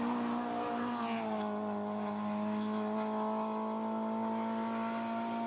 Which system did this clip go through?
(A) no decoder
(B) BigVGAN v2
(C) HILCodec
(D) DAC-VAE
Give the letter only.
A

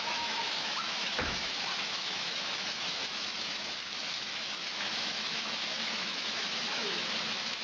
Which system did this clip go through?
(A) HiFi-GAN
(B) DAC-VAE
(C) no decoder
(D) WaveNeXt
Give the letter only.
B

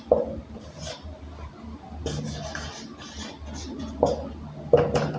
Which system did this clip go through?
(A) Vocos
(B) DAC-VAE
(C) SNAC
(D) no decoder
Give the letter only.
D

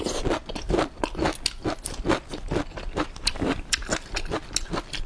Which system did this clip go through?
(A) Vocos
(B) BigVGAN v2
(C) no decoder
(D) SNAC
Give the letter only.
C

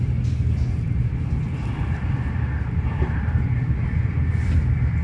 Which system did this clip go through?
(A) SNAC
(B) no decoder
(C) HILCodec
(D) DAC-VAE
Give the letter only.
B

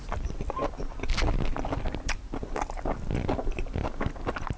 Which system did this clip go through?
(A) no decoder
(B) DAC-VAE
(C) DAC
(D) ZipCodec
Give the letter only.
A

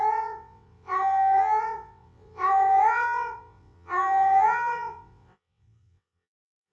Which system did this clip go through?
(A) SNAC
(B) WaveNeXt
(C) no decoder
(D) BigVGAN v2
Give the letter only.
B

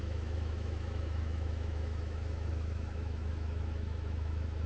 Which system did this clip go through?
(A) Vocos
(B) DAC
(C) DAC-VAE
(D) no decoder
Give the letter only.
C